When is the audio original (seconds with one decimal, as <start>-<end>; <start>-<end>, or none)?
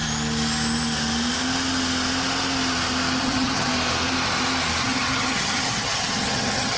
0.0-3.2; 3.7-4.8